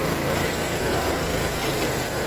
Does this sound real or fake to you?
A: real